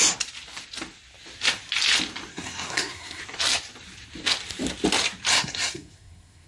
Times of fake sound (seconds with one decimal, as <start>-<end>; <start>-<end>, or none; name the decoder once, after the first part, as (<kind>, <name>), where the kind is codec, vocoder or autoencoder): 2.3-3.2 (codec, SNAC); 5.3-6.5